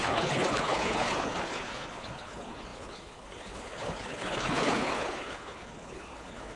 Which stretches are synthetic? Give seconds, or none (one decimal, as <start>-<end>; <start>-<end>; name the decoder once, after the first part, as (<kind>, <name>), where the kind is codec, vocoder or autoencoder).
0.0-6.6 (codec, HILCodec)